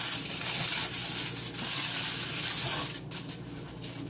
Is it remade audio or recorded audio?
recorded